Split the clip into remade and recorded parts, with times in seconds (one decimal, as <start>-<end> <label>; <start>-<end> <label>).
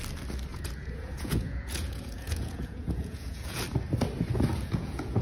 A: 0.0-0.5 recorded; 0.5-3.6 remade; 3.6-4.5 recorded; 4.5-5.2 remade